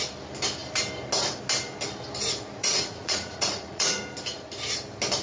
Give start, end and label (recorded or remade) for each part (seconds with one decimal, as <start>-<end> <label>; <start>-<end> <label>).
0.0-2.6 recorded; 2.6-4.0 remade; 4.0-5.2 recorded